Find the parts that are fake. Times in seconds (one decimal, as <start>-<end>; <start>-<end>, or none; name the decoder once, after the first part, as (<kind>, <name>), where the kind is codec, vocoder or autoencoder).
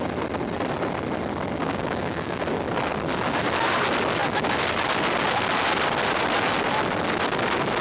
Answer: 1.6-2.4 (codec, DAC)